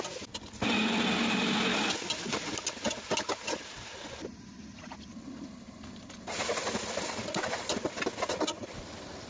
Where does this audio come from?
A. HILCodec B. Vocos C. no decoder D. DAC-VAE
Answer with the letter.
C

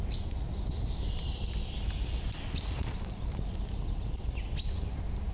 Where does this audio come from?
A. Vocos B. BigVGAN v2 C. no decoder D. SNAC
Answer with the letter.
C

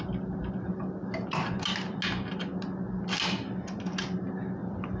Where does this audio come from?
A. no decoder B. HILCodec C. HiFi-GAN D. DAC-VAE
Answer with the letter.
A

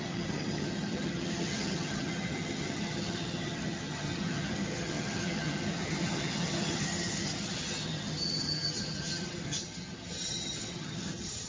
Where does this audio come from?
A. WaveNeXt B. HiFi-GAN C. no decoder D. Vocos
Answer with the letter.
B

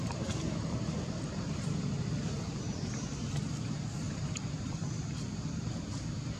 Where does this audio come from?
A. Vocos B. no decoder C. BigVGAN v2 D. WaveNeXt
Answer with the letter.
C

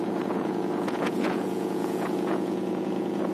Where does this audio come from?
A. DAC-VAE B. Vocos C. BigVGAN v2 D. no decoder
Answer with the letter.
B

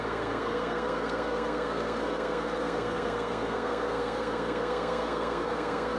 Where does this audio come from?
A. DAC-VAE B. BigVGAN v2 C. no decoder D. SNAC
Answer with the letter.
D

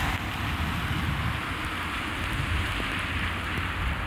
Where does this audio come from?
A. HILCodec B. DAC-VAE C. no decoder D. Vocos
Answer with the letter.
C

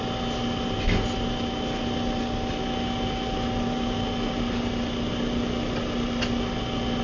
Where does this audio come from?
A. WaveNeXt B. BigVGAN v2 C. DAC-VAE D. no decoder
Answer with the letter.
D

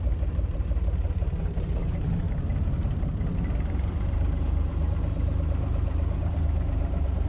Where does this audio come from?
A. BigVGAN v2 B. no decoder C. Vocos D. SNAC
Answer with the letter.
A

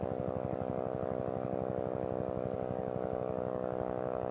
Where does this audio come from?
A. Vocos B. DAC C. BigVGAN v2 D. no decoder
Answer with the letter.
B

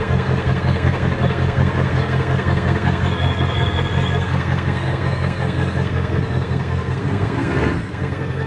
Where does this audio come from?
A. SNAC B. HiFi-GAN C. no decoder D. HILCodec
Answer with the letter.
A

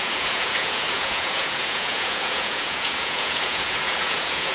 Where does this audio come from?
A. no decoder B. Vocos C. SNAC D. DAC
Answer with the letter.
B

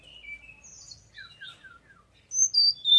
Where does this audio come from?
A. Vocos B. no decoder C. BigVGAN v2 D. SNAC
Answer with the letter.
B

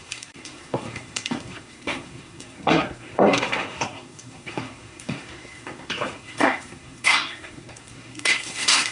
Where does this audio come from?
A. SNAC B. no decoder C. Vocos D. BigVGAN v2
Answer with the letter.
A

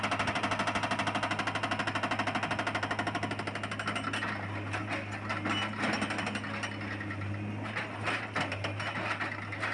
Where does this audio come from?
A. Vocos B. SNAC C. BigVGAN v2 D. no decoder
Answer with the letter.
D